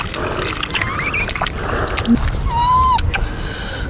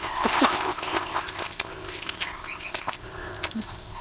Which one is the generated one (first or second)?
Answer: second